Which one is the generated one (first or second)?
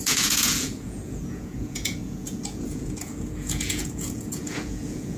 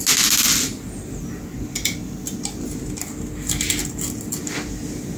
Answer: first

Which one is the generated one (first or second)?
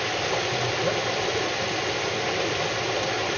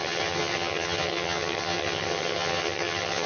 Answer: second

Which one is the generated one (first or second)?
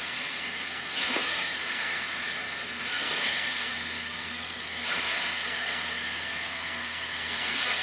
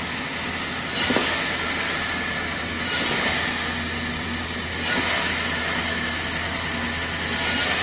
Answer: first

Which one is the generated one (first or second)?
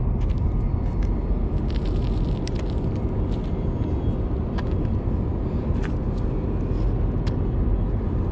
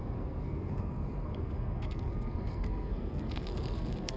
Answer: second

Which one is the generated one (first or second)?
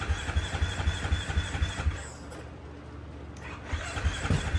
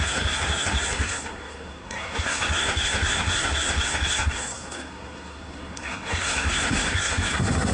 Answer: second